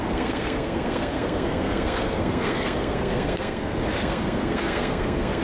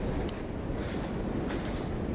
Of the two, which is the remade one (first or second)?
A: first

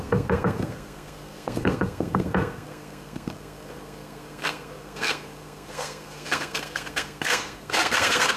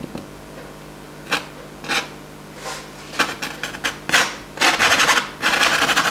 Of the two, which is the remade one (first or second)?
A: first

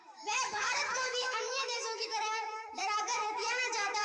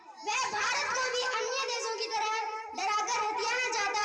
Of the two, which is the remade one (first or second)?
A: first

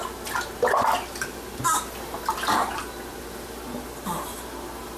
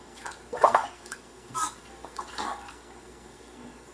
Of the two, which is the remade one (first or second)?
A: second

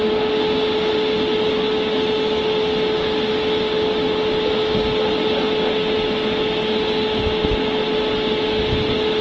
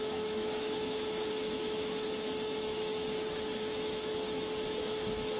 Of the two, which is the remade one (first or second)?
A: second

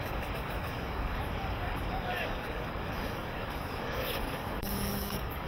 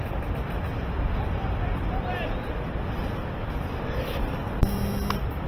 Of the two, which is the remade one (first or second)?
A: first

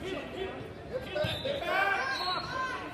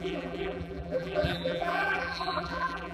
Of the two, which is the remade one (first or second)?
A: second